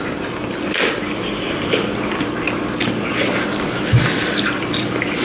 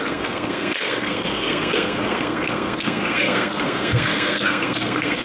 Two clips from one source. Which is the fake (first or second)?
second